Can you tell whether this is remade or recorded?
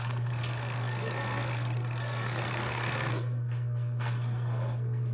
remade